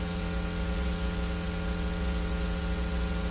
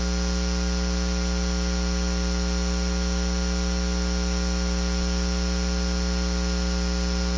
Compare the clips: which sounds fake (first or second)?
first